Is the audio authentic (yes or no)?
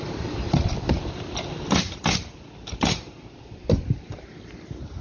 yes